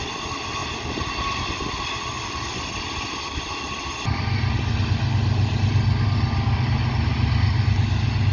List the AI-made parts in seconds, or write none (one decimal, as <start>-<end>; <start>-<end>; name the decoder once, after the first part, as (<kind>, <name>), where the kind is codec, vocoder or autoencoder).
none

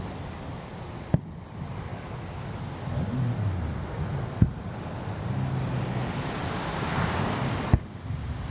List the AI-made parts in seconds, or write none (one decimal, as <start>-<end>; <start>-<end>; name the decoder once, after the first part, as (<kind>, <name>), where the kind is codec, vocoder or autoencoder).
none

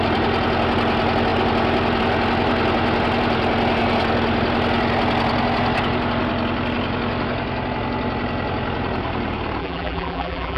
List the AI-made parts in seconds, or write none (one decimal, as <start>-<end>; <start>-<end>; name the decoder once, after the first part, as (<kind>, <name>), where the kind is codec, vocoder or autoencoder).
9.6-10.6 (vocoder, BigVGAN v2)